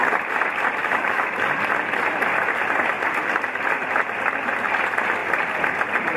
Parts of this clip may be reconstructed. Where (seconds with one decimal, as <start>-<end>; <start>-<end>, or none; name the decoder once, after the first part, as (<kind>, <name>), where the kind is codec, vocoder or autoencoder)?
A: 0.8-1.3 (autoencoder, DAC-VAE)